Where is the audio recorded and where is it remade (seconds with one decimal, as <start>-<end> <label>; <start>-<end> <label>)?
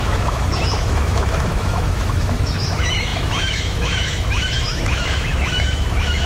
0.0-6.3 remade